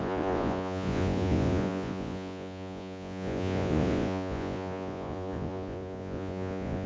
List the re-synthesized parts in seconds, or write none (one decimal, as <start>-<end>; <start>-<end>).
0.0-6.9